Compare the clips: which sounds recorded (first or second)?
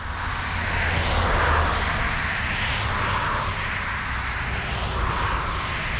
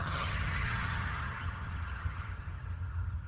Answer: first